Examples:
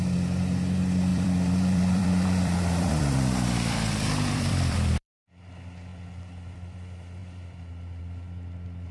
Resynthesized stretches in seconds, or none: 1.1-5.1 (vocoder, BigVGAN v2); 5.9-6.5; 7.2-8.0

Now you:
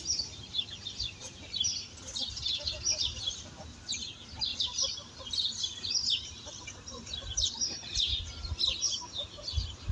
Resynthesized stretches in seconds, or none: 1.2-3.9 (vocoder, BigVGAN v2); 4.5-8.2

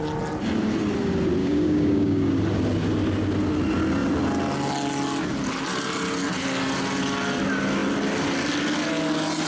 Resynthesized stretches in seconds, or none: 1.4-2.3 (codec, DAC)

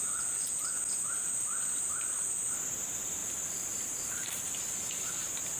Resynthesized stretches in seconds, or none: 3.2-4.5 (vocoder, BigVGAN v2)

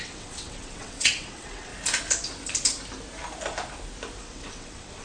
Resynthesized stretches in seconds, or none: 0.0-1.7 (vocoder, WaveNeXt); 4.2-5.0